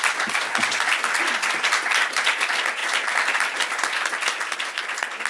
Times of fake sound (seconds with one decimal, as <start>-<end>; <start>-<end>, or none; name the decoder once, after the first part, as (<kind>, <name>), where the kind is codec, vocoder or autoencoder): none